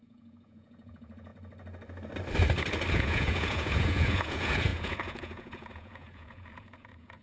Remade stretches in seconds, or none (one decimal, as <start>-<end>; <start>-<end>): 0.0-1.3; 2.9-7.2